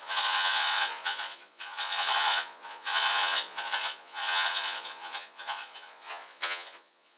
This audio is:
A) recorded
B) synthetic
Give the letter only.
B